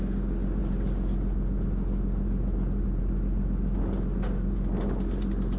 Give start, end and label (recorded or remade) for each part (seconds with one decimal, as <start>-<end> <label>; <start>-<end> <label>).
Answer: 0.0-5.6 recorded